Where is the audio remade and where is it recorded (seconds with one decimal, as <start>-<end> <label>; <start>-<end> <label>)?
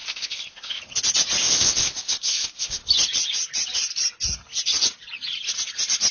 0.0-0.8 remade; 0.8-1.4 recorded; 1.4-2.8 remade; 2.8-6.1 recorded